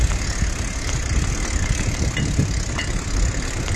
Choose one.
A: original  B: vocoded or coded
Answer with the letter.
A